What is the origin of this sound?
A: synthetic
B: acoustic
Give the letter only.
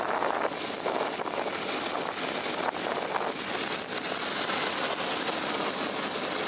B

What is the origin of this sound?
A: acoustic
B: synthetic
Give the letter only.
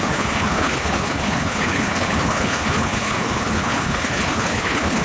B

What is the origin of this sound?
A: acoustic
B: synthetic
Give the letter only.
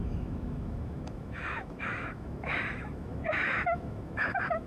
B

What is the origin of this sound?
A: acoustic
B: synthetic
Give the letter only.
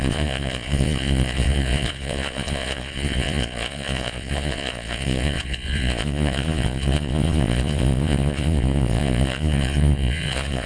B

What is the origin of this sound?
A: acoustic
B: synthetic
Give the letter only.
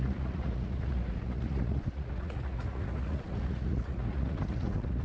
B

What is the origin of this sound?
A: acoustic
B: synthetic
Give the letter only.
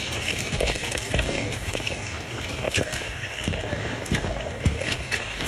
B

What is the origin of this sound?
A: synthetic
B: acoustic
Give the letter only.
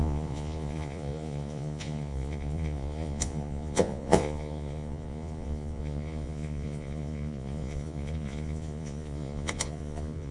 A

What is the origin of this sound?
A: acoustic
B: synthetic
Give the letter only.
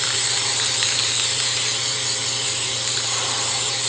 B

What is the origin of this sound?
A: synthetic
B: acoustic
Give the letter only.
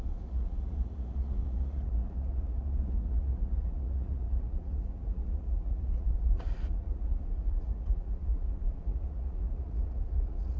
A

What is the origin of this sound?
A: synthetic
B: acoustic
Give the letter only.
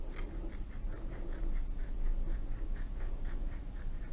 B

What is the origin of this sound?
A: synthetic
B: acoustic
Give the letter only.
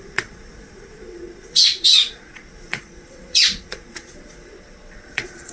A